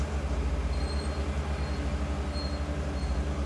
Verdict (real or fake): real